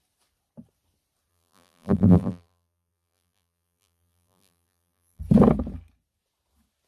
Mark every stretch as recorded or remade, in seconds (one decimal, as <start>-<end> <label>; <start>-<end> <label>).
0.0-1.3 recorded; 1.3-5.2 remade; 5.2-6.9 recorded